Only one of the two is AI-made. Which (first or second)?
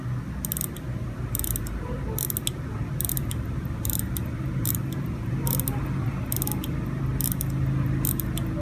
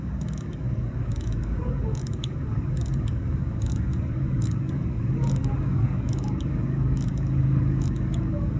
second